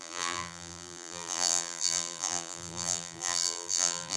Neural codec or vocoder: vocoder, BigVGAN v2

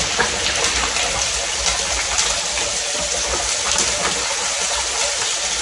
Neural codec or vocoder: vocoder, BigVGAN v2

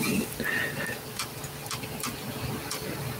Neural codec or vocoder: none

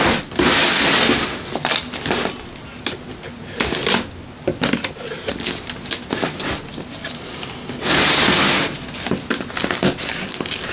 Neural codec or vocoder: none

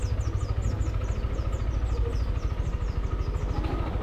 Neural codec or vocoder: none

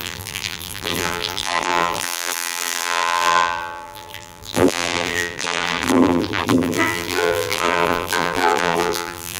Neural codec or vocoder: vocoder, BigVGAN v2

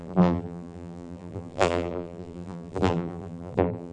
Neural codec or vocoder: vocoder, BigVGAN v2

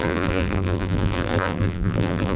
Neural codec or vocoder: vocoder, BigVGAN v2